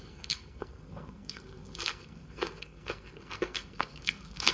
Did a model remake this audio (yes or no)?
yes